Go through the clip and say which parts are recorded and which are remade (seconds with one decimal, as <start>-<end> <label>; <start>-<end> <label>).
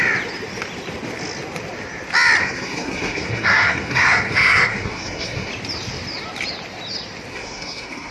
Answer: 0.0-2.4 recorded; 2.4-5.5 remade; 5.5-7.3 recorded; 7.3-8.1 remade